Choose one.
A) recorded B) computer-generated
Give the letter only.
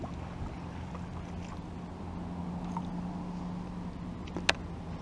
A